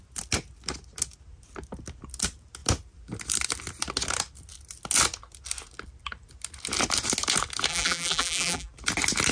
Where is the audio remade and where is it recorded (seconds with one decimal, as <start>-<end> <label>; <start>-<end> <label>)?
0.0-7.7 recorded; 7.7-8.7 remade; 8.7-9.3 recorded